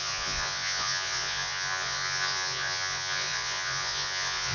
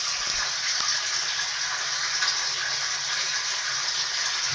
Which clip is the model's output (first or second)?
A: first